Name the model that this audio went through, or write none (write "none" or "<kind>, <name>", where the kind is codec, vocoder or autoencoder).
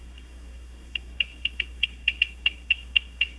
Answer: codec, SNAC